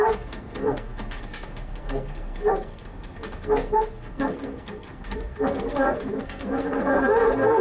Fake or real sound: fake